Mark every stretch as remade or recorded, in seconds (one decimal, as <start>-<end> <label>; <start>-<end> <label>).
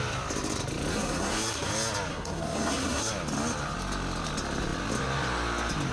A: 0.0-0.9 recorded; 0.9-1.7 remade; 1.7-2.1 recorded; 2.1-3.1 remade; 3.1-5.9 recorded